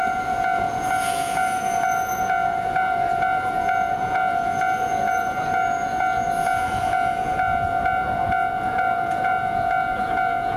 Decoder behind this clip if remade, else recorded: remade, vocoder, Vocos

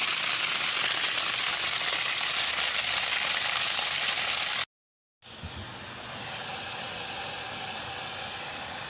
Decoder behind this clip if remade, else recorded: recorded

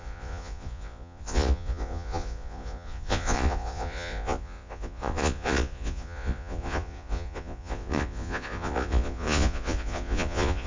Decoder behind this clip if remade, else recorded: remade, vocoder, Vocos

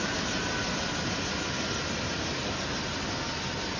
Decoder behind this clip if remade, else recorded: recorded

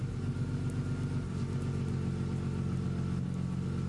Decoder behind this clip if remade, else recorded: recorded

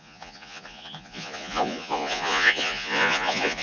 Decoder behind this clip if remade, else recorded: remade, vocoder, Vocos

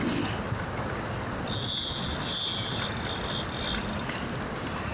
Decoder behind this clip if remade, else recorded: recorded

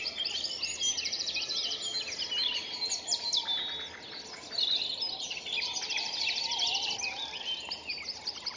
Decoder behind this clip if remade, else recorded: recorded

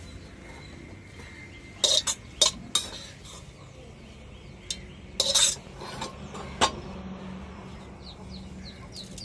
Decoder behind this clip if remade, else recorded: recorded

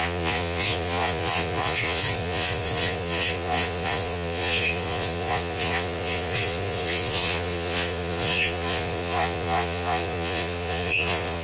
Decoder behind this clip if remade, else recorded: remade, vocoder, Vocos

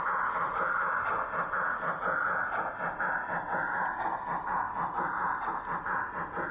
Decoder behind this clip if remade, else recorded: recorded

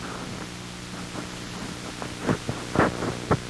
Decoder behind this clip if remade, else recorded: recorded